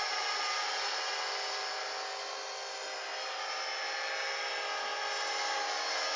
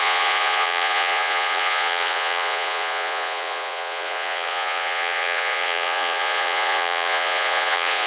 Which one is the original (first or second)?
first